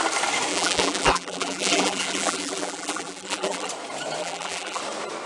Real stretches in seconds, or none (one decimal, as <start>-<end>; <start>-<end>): 0.0-0.5; 3.7-4.2; 4.8-5.3

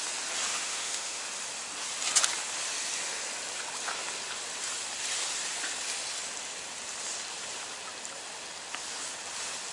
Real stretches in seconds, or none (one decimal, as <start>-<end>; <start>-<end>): 0.0-0.5; 1.2-9.7

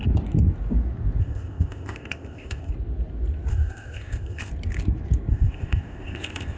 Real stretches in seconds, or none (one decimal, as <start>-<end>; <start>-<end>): 0.0-1.2; 2.7-3.5; 4.5-5.3